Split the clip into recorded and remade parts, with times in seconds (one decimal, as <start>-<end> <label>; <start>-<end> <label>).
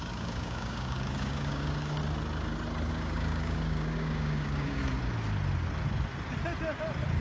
0.0-2.0 remade; 2.0-2.9 recorded; 2.9-4.8 remade; 4.8-7.2 recorded